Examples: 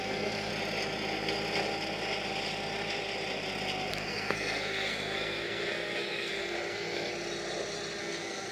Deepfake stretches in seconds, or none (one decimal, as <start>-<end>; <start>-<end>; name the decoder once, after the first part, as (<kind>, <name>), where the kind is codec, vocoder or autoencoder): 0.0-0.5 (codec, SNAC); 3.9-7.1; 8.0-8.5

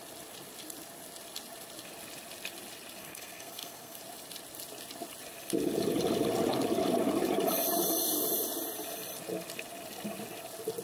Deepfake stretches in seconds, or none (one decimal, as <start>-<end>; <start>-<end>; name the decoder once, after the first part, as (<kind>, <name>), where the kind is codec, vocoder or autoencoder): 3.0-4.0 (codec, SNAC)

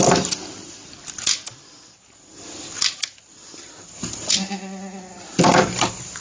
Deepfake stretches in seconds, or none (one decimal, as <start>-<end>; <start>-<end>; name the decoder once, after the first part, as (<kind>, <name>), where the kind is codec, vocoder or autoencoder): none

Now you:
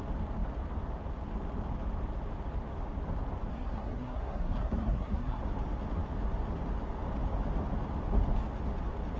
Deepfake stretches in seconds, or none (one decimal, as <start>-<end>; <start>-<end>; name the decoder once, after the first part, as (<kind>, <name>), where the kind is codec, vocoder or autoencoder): 3.5-5.4 (codec, SNAC)

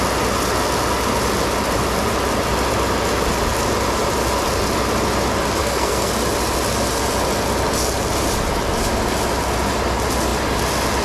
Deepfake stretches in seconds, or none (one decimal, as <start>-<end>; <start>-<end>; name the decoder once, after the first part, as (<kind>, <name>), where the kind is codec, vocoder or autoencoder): 5.6-6.1 (codec, SNAC)

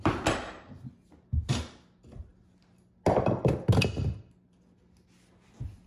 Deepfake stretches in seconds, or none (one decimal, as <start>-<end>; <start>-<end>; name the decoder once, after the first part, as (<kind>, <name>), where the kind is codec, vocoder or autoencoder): none

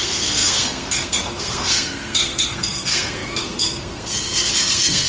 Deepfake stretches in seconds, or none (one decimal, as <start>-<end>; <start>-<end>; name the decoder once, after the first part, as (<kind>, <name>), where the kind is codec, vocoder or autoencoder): 0.0-5.1 (codec, SNAC)

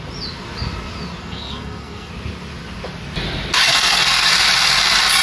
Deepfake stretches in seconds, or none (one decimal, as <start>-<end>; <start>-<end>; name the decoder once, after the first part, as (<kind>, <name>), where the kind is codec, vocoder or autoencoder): 1.2-2.1 (codec, SNAC); 3.7-4.3